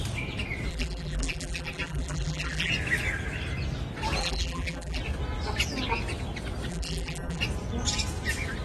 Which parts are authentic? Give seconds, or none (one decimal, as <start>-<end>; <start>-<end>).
0.0-0.7; 2.7-4.2; 5.0-6.7; 7.4-8.6